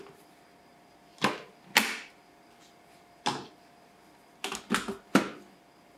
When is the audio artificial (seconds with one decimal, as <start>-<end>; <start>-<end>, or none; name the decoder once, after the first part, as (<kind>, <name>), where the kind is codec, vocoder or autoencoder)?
none